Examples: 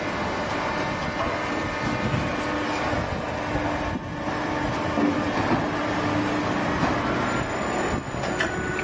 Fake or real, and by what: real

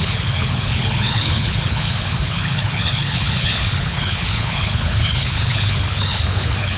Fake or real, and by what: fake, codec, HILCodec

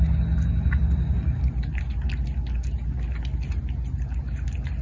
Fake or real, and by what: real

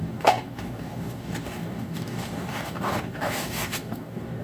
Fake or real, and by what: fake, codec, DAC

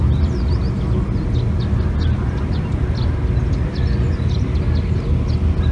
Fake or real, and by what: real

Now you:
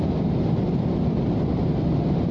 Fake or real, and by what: real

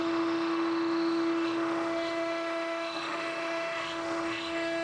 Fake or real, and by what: fake, autoencoder, DAC-VAE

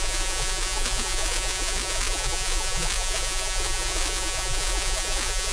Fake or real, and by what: fake, vocoder, Vocos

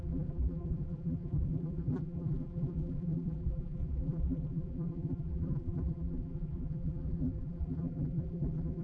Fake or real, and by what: fake, vocoder, BigVGAN v2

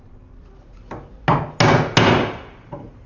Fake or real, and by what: real